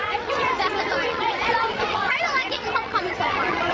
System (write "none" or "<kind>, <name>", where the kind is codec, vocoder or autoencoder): vocoder, WaveNeXt